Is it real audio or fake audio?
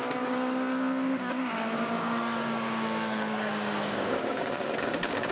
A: fake